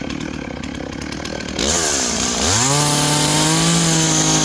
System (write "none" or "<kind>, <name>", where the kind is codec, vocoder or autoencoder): none